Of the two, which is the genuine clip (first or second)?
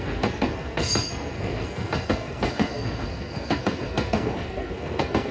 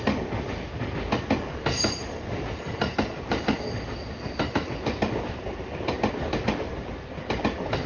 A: second